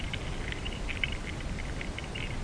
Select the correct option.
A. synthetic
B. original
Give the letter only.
B